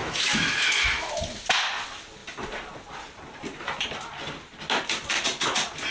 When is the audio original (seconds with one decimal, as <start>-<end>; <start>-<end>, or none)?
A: 1.1-5.9